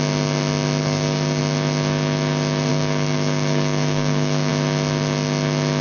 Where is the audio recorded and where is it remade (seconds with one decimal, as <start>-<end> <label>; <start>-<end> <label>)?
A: 0.0-0.8 recorded; 0.8-1.4 remade; 1.4-2.7 recorded; 2.7-4.5 remade; 4.5-5.8 recorded